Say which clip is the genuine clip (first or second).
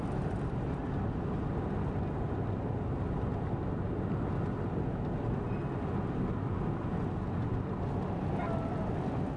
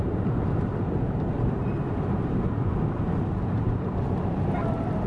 first